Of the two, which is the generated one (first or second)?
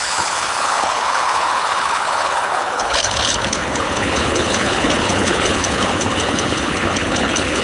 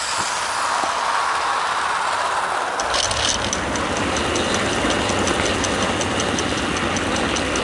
first